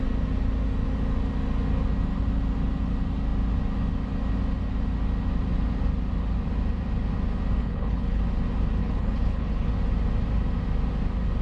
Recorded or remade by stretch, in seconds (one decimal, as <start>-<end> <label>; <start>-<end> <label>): 0.0-7.6 recorded; 7.6-8.2 remade; 8.2-8.8 recorded; 8.8-9.7 remade; 9.7-11.4 recorded